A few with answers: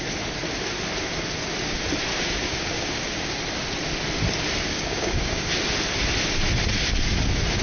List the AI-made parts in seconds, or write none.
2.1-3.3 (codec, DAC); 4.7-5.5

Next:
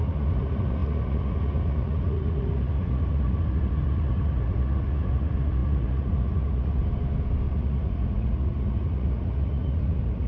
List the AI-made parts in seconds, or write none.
0.0-6.8 (vocoder, Vocos); 7.5-10.3